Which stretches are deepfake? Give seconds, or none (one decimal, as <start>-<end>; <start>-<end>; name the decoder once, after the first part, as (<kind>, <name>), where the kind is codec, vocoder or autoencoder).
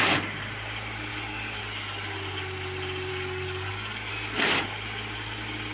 1.1-1.6 (codec, DAC); 3.1-4.1